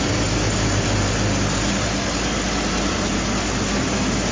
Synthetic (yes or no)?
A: no